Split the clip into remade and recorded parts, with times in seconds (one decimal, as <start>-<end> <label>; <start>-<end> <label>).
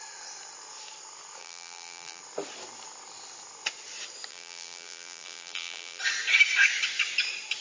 0.0-1.4 recorded; 1.4-2.2 remade; 2.2-4.3 recorded; 4.3-6.0 remade; 6.0-7.6 recorded